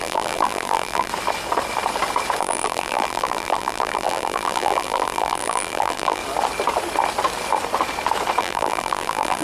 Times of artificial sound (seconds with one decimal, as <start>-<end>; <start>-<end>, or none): 0.0-1.1; 2.4-6.2; 8.4-9.4